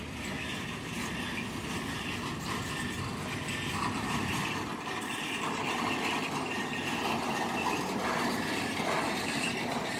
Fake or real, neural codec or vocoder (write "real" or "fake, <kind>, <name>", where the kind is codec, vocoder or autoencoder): real